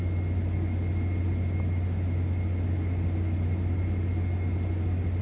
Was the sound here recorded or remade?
recorded